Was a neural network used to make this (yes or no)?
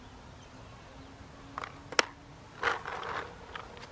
no